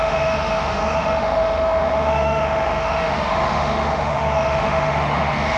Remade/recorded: remade